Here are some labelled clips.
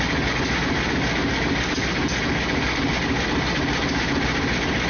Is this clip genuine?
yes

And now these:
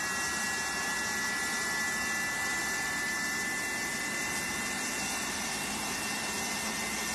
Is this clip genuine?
yes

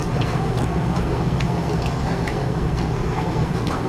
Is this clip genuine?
no